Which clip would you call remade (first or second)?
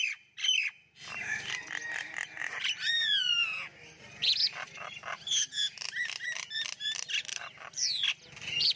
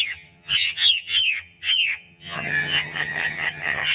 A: second